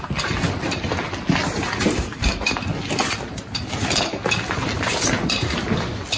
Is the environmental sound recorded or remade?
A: recorded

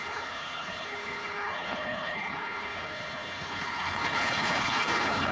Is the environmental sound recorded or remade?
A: remade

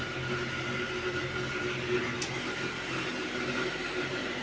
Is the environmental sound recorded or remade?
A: recorded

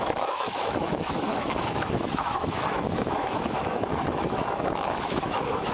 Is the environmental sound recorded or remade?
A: remade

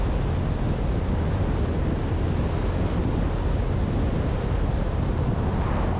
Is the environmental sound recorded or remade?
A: recorded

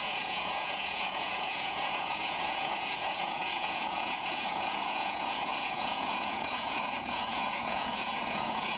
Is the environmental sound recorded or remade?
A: remade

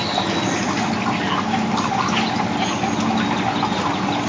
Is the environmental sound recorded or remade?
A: recorded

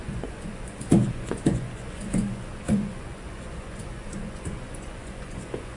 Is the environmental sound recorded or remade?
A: remade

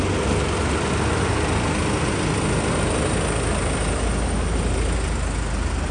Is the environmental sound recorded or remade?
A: recorded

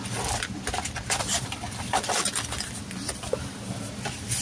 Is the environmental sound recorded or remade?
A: recorded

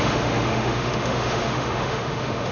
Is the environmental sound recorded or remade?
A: remade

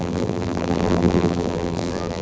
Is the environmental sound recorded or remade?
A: remade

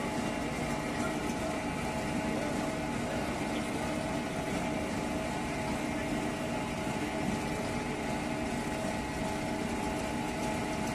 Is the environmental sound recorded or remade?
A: recorded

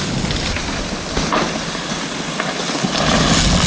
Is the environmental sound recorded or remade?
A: recorded